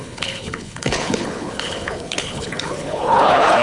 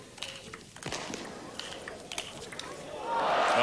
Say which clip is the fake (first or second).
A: first